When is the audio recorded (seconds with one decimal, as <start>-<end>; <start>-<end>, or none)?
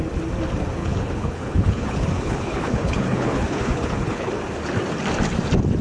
0.0-0.8; 4.3-5.8